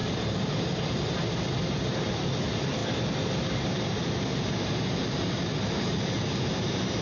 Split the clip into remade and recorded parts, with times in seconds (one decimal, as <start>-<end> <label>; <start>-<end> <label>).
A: 0.0-7.0 recorded